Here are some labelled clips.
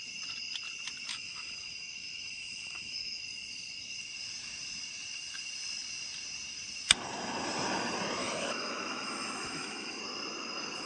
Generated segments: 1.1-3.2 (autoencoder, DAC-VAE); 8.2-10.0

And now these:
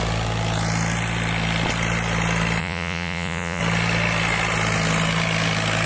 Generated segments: 2.6-3.6 (vocoder, Vocos)

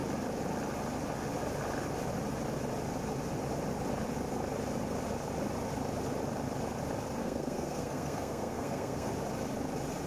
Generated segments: 7.2-9.1 (codec, SNAC)

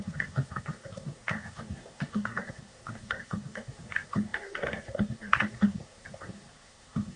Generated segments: 0.0-7.2 (codec, SNAC)

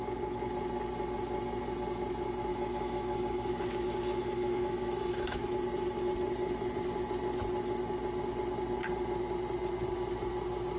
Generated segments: 2.5-5.4 (autoencoder, DAC-VAE)

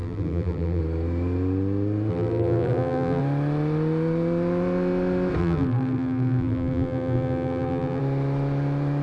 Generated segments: 0.0-0.8 (vocoder, BigVGAN v2); 2.1-3.2; 5.4-8.0

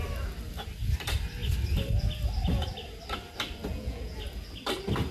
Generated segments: 3.7-4.2 (vocoder, Vocos)

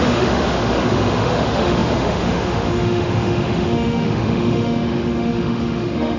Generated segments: 0.0-6.2 (autoencoder, DAC-VAE)